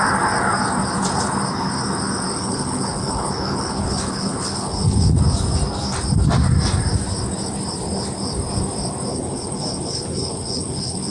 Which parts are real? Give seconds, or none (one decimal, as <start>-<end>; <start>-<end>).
0.0-2.4; 5.2-9.1